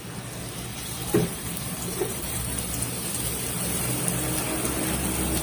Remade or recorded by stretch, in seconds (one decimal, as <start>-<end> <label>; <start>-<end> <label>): 0.0-0.7 recorded; 0.7-3.9 remade; 3.9-5.4 recorded